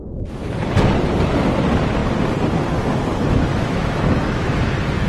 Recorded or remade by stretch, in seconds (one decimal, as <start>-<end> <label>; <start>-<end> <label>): 0.0-3.5 recorded; 3.5-4.6 remade; 4.6-5.1 recorded